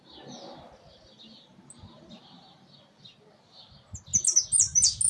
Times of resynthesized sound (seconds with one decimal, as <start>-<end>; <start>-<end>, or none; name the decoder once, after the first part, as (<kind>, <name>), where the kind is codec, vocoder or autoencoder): none